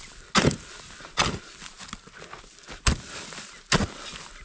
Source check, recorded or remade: recorded